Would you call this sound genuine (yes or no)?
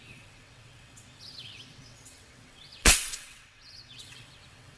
no